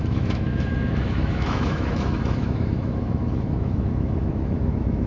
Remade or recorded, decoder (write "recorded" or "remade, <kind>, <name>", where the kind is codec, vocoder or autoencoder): remade, autoencoder, DAC-VAE